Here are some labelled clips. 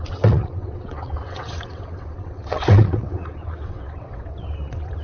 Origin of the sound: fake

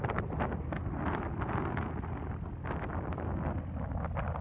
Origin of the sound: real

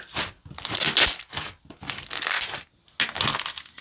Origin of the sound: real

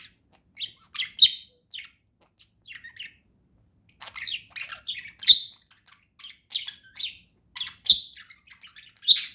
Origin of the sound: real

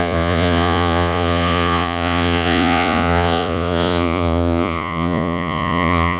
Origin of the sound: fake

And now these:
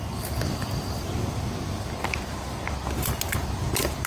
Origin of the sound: real